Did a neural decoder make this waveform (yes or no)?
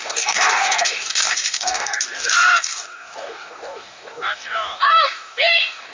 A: yes